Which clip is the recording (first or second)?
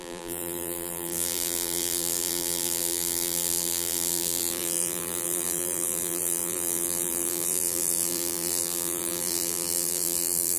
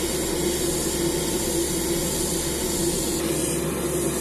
second